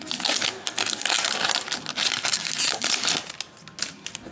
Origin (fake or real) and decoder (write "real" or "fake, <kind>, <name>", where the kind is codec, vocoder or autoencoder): real